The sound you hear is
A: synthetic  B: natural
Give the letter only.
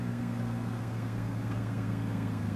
A